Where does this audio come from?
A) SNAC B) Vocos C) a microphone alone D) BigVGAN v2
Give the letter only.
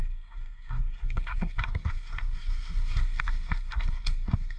A